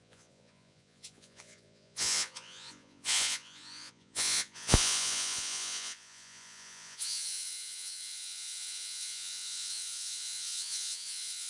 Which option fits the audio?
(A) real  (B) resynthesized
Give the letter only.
B